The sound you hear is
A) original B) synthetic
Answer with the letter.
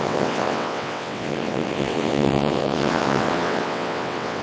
B